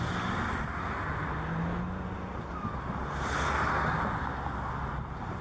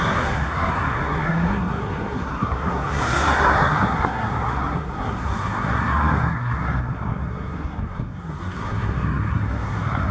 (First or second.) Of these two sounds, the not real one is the second